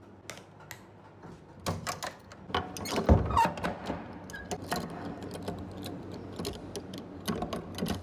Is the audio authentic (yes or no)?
yes